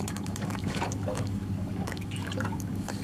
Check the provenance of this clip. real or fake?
fake